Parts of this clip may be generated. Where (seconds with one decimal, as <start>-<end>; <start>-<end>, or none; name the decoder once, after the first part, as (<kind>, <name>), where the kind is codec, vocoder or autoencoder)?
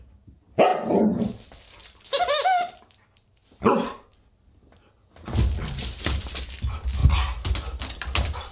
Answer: none